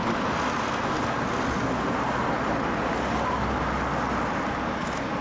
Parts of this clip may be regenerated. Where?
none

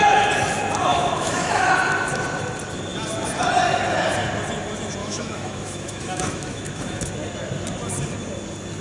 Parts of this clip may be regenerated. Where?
0.9-1.7 (autoencoder, DAC-VAE); 5.0-7.1

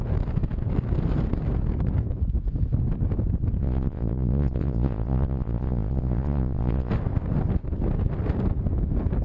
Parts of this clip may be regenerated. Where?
3.6-6.9 (vocoder, Vocos)

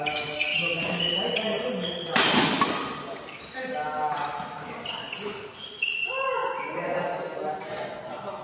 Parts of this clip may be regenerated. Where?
none

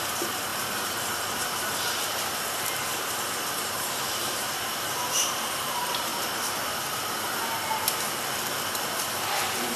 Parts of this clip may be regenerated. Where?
0.0-6.1 (vocoder, BigVGAN v2); 9.0-9.8

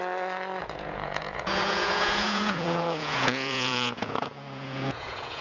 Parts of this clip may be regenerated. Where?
0.6-5.4 (vocoder, Vocos)

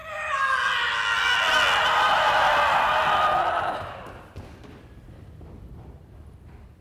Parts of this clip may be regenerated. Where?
3.7-6.8 (vocoder, BigVGAN v2)

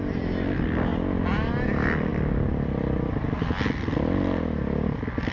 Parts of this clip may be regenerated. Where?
none